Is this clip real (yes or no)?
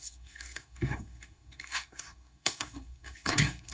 no